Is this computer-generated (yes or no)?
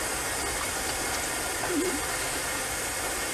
no